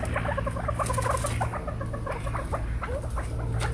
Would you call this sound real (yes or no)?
yes